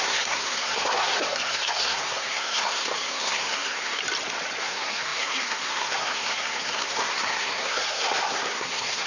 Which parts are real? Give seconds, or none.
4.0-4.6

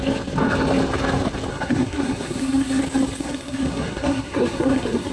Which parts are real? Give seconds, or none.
0.0-1.5; 2.8-3.2

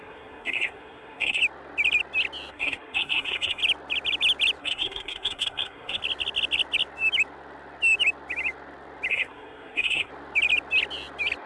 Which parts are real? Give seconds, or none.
1.4-2.5; 3.6-4.6; 6.0-9.1; 10.1-11.5

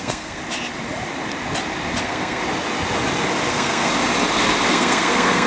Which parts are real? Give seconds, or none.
0.4-2.0; 2.4-3.5; 3.9-4.7